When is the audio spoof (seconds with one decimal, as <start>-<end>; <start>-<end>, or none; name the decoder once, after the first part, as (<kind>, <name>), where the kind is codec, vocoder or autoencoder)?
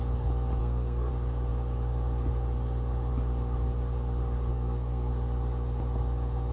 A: 0.6-1.1 (codec, SNAC); 4.5-5.1